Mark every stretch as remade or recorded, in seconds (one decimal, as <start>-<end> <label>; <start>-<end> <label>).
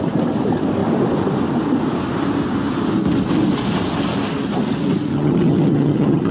0.0-5.1 recorded; 5.1-6.3 remade